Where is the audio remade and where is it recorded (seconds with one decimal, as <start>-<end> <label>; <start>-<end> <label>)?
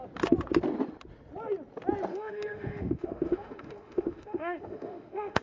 0.0-2.1 recorded; 2.1-5.4 remade